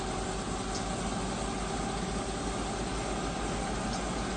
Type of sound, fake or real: real